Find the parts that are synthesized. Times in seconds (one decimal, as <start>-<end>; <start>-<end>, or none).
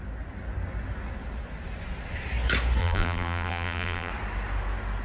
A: 2.8-4.1